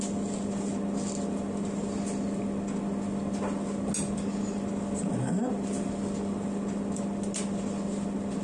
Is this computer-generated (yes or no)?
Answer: no